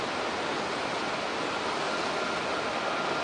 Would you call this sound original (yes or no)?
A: yes